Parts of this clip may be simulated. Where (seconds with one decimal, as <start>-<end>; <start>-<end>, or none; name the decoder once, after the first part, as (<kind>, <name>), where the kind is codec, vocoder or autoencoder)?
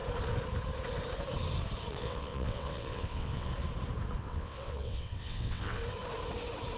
1.9-3.5 (vocoder, WaveNeXt); 4.2-5.8